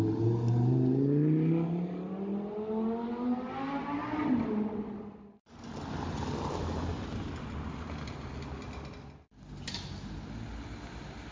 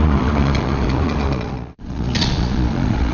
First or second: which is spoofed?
second